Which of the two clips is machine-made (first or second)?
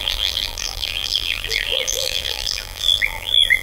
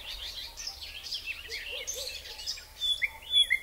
first